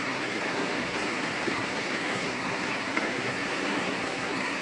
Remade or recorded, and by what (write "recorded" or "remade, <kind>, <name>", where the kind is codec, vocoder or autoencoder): remade, codec, SNAC